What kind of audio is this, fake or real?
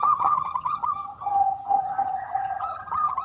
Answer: fake